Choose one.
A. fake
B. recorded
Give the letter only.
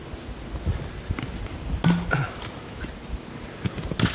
B